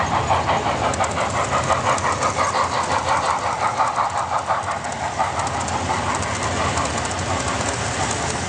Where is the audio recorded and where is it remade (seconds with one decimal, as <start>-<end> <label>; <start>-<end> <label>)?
0.0-8.5 recorded